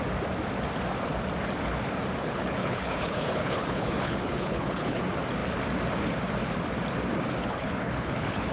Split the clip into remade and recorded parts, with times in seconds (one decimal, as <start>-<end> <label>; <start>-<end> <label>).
0.0-2.2 recorded; 2.2-5.0 remade; 5.0-7.4 recorded; 7.4-8.5 remade